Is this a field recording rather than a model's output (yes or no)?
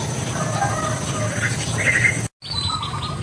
yes